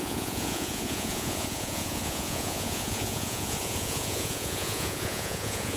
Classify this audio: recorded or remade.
remade